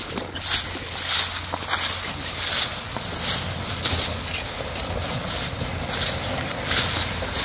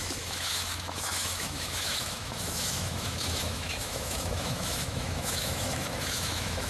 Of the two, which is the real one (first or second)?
first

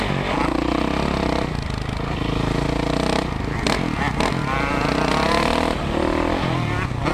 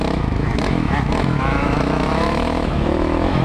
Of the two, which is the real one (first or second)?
first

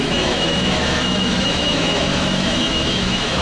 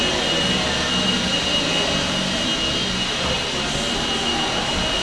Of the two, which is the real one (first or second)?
second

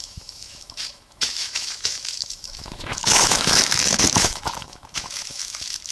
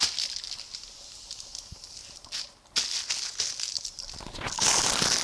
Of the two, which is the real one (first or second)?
second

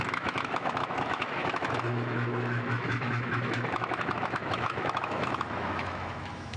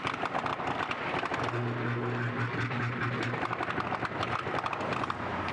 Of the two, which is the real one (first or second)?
second